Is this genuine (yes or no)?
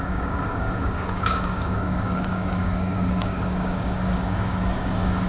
no